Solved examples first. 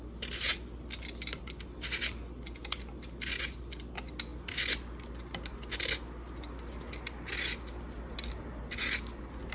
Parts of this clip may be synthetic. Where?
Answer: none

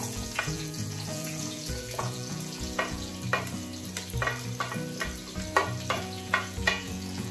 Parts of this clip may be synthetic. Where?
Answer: 0.0-3.1 (vocoder, Vocos); 6.0-7.3

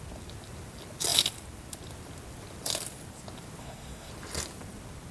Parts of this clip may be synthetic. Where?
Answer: 3.6-4.1 (codec, SNAC)

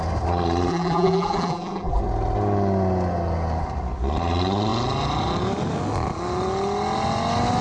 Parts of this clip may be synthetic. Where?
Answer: 0.7-2.0 (vocoder, BigVGAN v2)

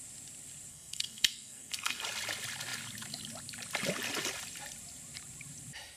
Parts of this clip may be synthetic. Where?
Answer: 0.7-2.0 (codec, SNAC)

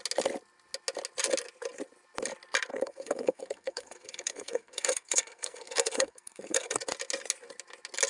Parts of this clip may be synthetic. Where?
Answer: 2.7-6.7 (codec, SNAC)